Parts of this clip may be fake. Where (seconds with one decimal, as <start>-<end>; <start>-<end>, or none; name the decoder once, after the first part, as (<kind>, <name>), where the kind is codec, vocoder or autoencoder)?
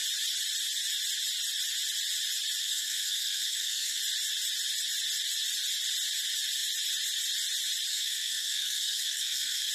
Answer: 2.6-4.0 (codec, SNAC); 7.9-9.7